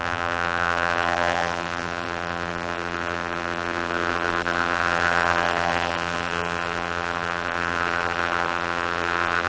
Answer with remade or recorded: remade